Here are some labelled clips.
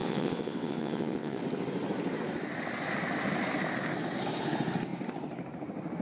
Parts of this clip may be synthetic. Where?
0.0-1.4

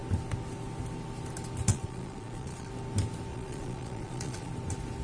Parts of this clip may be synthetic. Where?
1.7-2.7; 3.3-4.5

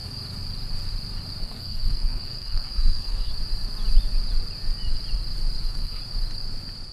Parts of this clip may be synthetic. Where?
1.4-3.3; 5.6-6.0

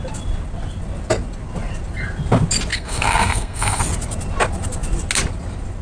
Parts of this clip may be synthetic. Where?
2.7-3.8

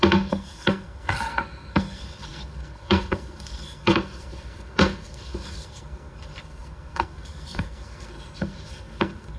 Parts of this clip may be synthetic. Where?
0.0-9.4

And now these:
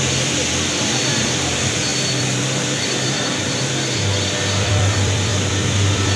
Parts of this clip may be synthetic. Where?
0.0-6.2

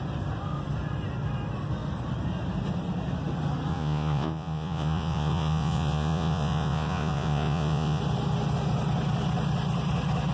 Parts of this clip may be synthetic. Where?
3.7-8.0